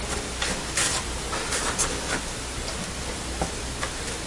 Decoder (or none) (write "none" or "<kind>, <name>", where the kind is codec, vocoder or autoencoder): none